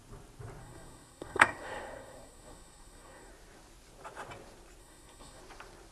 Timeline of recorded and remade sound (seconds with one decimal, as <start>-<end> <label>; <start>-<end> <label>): 0.0-0.6 recorded; 0.6-3.3 remade; 3.3-4.8 recorded; 4.8-5.4 remade; 5.4-5.9 recorded